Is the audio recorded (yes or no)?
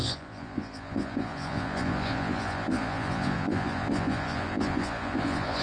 no